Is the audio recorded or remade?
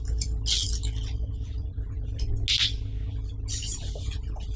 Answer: recorded